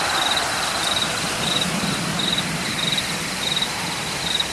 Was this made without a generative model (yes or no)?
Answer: yes